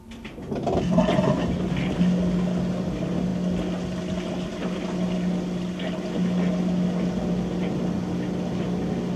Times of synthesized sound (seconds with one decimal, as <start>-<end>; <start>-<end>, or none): none